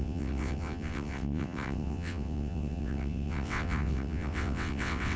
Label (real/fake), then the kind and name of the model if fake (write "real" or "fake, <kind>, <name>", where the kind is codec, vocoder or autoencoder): fake, vocoder, WaveNeXt